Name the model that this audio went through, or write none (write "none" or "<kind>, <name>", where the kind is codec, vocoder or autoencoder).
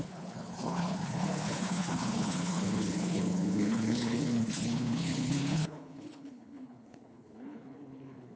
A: codec, HILCodec